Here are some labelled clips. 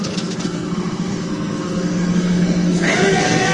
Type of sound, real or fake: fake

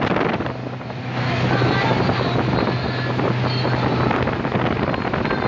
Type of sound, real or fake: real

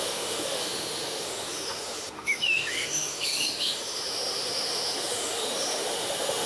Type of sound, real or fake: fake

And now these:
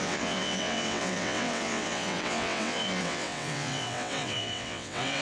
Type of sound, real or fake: fake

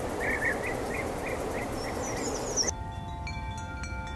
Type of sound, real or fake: real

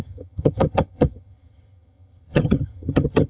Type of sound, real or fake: fake